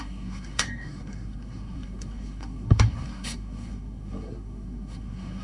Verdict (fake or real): fake